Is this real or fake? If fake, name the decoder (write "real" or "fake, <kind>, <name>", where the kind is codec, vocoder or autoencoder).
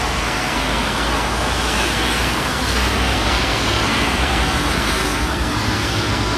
fake, codec, SNAC